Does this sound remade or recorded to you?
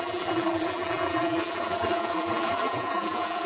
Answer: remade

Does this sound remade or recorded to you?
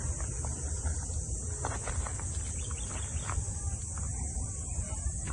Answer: recorded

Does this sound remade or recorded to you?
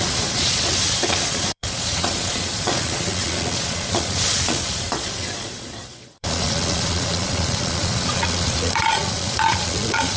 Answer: remade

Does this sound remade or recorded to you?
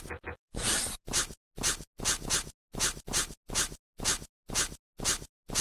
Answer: recorded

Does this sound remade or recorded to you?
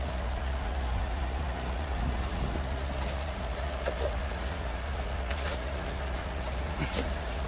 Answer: remade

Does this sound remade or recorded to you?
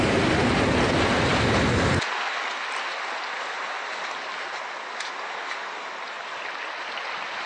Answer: recorded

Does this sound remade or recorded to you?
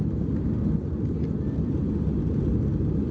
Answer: recorded